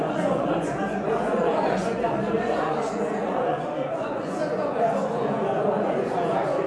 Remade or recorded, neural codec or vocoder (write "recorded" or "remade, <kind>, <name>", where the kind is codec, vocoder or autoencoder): remade, vocoder, Vocos